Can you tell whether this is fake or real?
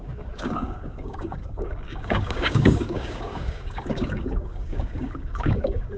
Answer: fake